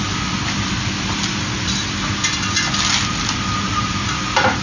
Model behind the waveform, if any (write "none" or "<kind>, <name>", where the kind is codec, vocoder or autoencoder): none